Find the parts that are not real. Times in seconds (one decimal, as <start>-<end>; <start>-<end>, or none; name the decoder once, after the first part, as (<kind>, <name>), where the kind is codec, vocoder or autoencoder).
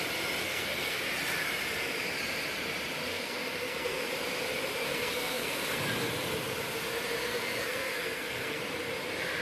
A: 0.4-1.0 (codec, SNAC); 3.1-4.1; 4.8-5.8; 7.3-8.6